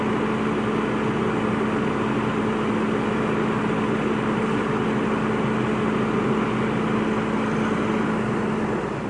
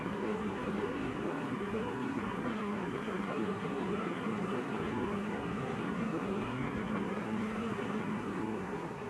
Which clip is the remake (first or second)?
second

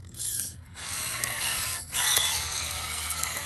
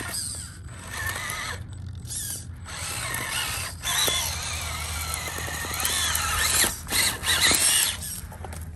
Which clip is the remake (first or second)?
first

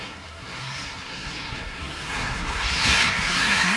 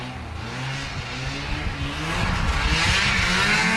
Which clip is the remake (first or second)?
first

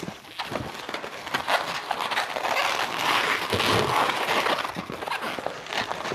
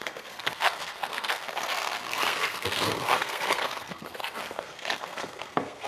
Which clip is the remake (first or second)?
second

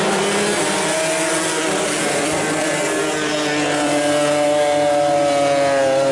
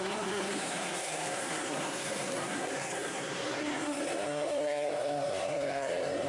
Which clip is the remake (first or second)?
second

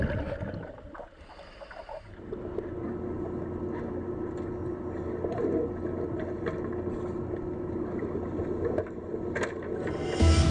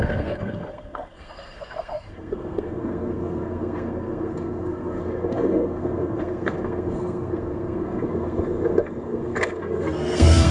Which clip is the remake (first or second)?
second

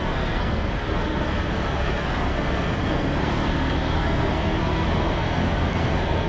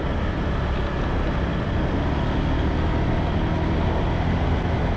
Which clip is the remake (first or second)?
first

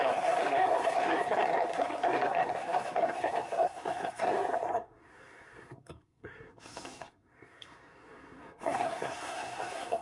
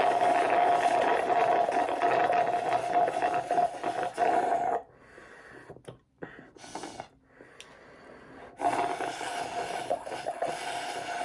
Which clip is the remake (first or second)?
first